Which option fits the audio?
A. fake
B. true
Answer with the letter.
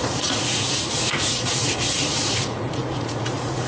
A